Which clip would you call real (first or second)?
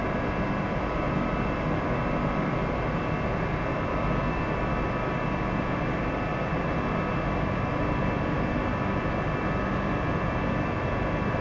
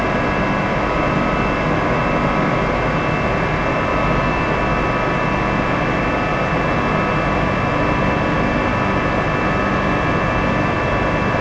second